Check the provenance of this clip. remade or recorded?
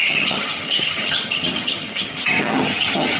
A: remade